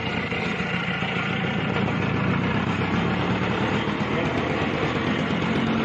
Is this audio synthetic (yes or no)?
no